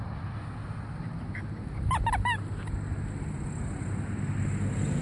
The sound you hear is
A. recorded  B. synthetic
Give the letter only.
A